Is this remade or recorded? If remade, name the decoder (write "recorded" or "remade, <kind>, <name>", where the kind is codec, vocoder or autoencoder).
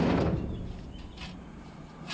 recorded